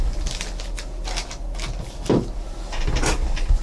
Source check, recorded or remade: recorded